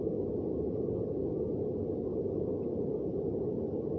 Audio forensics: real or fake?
real